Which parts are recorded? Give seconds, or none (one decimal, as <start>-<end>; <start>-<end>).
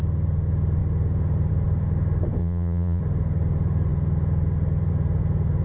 0.0-2.4; 3.0-5.6